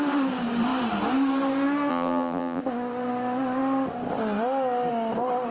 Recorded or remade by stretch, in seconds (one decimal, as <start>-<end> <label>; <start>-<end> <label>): 0.0-1.9 recorded; 1.9-2.6 remade; 2.6-5.5 recorded